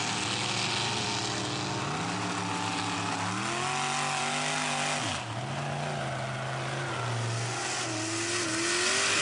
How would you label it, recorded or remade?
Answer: recorded